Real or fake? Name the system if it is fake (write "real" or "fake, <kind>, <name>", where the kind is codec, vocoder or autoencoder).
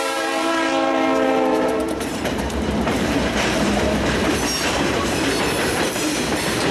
fake, vocoder, BigVGAN v2